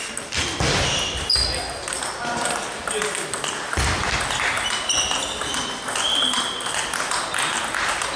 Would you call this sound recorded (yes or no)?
yes